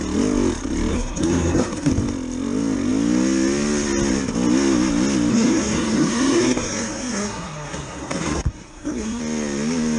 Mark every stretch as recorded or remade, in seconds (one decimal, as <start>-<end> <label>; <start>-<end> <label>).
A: 0.0-0.9 recorded; 0.9-1.9 remade; 1.9-5.3 recorded; 5.3-9.2 remade; 9.2-10.0 recorded